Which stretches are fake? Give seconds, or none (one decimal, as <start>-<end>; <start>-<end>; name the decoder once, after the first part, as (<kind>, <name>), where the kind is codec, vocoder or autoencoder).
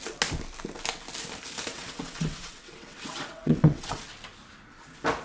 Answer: 1.7-4.0 (vocoder, WaveNeXt)